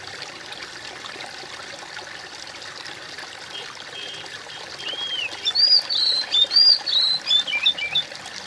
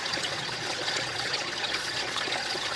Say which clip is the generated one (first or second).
second